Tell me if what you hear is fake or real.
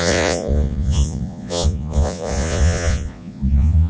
fake